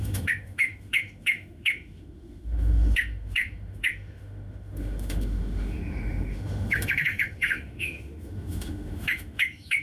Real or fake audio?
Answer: fake